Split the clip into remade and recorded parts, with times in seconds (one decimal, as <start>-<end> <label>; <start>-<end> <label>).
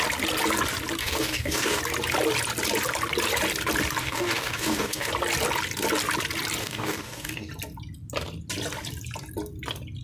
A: 0.0-1.0 recorded; 1.0-1.8 remade; 1.8-4.0 recorded; 4.0-5.1 remade; 5.1-6.6 recorded; 6.6-7.5 remade; 7.5-10.0 recorded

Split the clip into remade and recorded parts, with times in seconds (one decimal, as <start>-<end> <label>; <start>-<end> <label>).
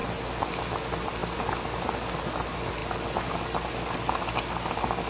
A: 0.0-5.1 recorded